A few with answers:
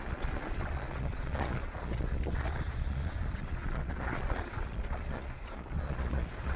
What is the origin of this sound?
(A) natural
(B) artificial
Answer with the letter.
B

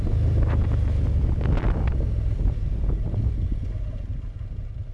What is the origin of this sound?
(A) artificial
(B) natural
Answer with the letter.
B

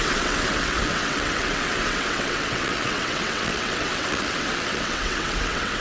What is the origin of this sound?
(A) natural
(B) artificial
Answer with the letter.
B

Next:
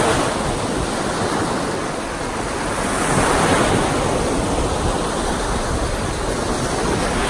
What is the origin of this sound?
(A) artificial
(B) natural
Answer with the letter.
B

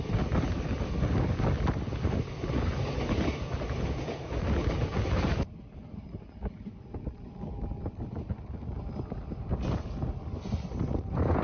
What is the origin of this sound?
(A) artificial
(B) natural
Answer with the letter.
B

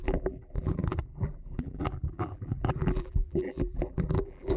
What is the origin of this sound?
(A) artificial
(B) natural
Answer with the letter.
A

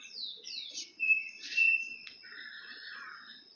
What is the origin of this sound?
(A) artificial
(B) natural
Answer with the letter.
A